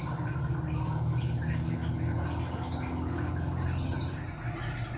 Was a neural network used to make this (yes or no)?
no